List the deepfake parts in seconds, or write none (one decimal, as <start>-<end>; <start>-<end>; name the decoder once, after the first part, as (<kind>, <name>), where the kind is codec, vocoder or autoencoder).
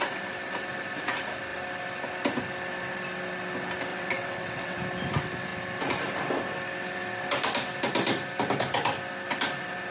3.9-4.8 (vocoder, WaveNeXt)